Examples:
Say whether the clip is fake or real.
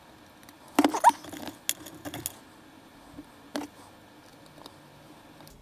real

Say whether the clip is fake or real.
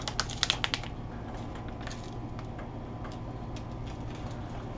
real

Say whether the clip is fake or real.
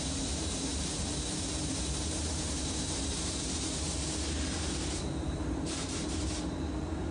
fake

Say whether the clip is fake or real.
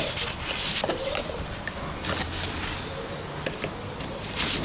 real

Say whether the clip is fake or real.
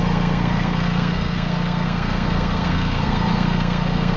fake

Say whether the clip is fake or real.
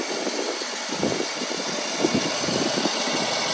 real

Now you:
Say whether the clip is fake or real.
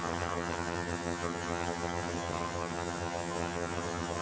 fake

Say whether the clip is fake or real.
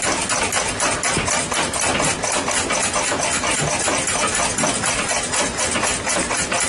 real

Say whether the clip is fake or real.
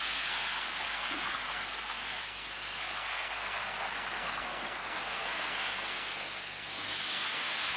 fake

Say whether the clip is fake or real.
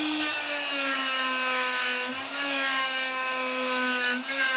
fake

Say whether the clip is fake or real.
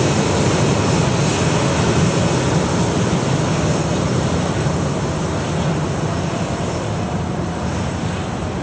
real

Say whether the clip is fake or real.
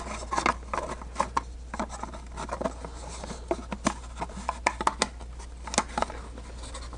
real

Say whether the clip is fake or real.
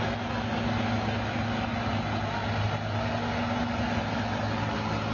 real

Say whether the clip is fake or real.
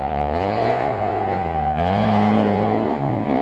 fake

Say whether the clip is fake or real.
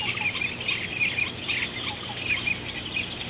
real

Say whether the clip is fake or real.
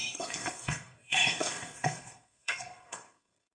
fake